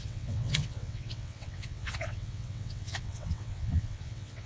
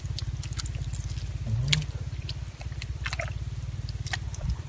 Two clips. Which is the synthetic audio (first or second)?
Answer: first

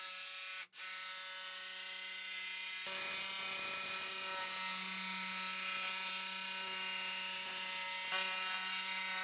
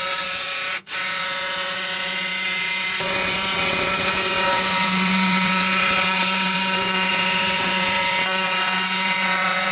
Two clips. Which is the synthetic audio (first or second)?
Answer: second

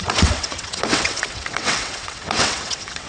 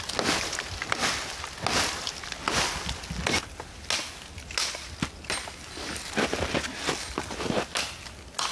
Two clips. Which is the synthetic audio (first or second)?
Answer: first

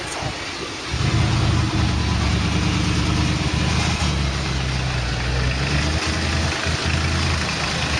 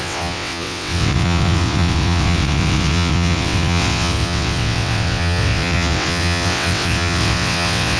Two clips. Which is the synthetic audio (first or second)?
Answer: second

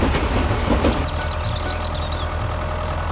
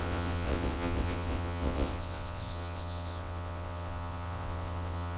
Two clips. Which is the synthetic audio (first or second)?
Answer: second